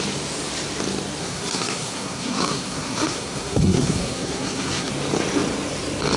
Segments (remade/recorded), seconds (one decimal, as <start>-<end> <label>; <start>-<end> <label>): 0.0-1.2 recorded; 1.2-4.9 remade; 4.9-6.2 recorded